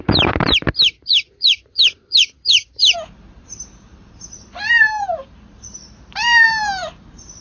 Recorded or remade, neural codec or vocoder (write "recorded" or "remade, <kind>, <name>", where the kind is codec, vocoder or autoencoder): remade, vocoder, BigVGAN v2